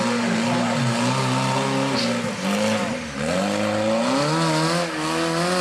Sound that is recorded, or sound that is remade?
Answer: recorded